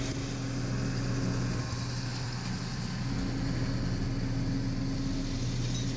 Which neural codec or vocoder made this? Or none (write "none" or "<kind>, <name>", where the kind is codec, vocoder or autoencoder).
none